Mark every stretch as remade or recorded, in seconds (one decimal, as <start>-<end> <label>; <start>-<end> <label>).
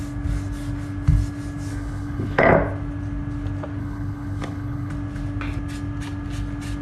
0.0-1.7 recorded; 1.7-2.5 remade; 2.5-3.8 recorded; 3.8-4.9 remade; 4.9-6.8 recorded